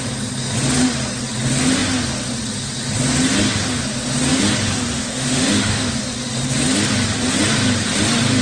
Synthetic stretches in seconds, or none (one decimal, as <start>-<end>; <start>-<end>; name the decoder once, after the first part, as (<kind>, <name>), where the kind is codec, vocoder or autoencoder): 4.9-5.9 (autoencoder, DAC-VAE)